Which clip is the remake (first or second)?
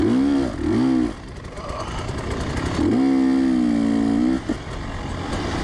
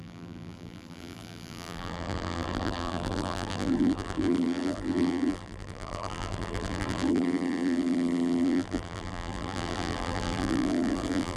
second